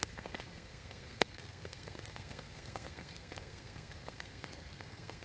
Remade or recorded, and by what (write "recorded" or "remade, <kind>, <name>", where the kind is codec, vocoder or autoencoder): remade, codec, SNAC